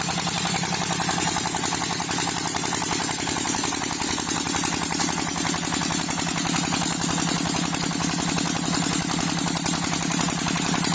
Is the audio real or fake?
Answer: real